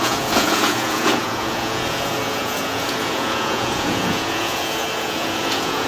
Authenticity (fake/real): fake